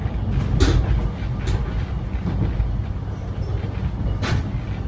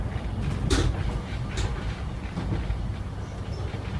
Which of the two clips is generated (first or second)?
second